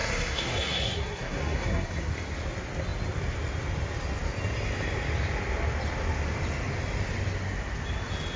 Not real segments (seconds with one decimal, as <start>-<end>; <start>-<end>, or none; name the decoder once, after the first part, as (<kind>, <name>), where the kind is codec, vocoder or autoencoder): 0.0-2.1 (codec, SNAC)